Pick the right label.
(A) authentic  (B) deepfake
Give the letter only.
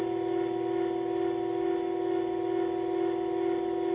A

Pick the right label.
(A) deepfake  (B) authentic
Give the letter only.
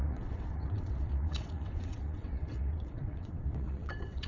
A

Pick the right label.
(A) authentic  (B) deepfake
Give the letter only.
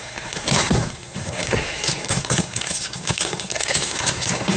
B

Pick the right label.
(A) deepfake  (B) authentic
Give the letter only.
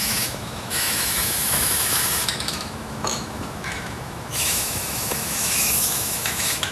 A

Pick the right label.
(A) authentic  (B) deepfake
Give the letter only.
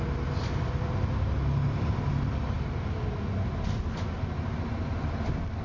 A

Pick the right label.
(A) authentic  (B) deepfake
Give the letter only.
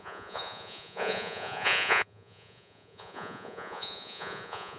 B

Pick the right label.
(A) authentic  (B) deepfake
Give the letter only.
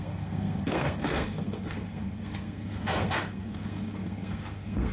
B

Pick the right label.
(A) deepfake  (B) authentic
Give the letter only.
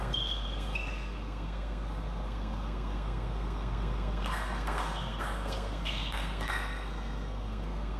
A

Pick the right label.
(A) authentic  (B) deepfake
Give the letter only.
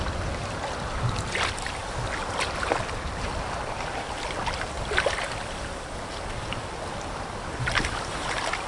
A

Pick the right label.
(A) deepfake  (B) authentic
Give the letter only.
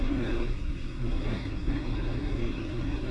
A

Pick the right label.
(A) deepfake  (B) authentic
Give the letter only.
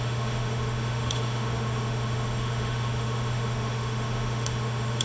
A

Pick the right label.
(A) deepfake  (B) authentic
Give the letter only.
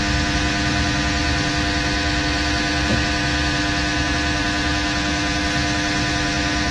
B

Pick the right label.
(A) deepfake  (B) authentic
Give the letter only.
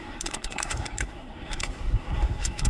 A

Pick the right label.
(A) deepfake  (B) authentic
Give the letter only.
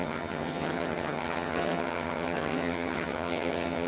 A